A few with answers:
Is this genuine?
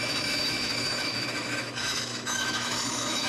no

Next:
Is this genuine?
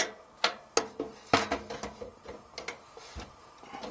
yes